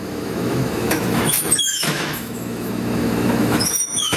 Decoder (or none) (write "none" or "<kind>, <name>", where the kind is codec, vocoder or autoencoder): autoencoder, DAC-VAE